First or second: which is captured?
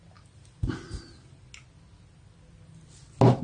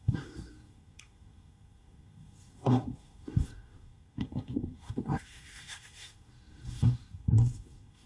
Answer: first